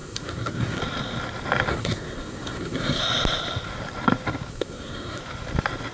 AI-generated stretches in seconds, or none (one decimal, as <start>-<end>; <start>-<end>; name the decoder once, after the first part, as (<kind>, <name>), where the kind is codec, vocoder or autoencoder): 0.0-0.8 (codec, SNAC); 1.7-3.0; 4.5-5.2